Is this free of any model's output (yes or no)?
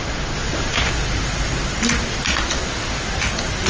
yes